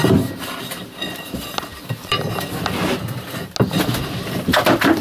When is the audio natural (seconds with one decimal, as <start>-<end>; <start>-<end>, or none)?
0.0-5.0